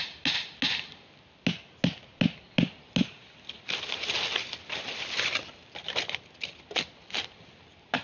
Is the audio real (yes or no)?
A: yes